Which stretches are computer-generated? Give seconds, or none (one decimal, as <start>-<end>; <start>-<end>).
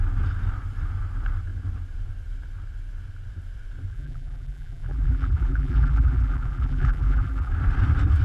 3.9-7.5